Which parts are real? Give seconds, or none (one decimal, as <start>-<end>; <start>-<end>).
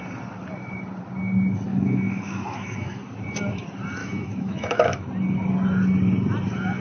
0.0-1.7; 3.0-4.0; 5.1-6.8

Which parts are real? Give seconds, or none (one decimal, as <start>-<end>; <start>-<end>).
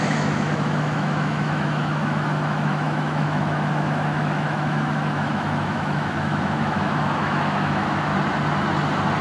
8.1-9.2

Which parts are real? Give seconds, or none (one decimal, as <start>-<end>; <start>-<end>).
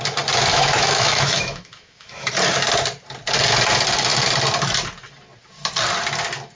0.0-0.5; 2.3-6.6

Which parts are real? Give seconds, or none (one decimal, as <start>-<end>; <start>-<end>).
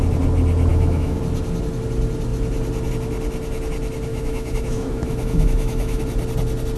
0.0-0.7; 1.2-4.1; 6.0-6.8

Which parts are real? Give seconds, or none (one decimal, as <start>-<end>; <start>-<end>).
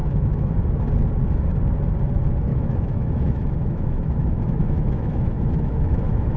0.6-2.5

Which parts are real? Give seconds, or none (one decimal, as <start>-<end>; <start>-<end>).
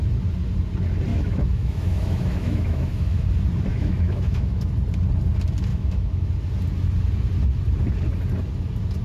0.0-1.1; 3.3-3.7; 4.7-5.7; 6.3-9.0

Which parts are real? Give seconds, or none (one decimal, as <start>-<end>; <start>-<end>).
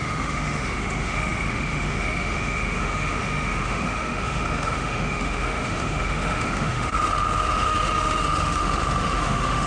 none